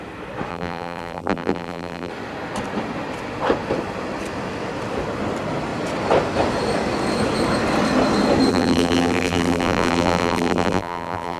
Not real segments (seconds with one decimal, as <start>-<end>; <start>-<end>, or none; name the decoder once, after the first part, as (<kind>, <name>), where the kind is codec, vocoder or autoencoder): 0.5-2.1 (vocoder, BigVGAN v2); 8.5-11.4